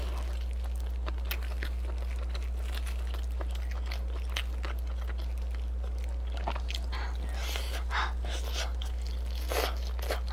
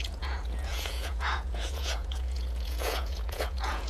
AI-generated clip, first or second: second